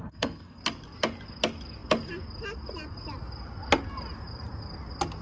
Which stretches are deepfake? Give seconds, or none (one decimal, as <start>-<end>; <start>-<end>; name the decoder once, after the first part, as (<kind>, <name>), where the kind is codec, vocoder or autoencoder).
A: 0.0-0.6 (codec, SNAC)